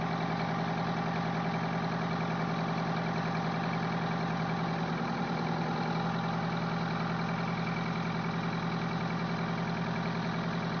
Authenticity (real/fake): real